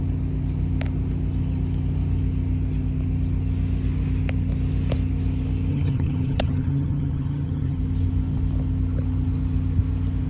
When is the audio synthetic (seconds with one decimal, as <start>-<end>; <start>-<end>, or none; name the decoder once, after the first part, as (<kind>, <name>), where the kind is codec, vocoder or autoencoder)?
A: 5.7-7.8 (vocoder, HiFi-GAN)